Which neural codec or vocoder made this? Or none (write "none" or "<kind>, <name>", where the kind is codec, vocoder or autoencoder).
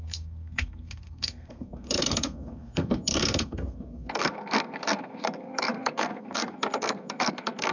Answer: codec, SNAC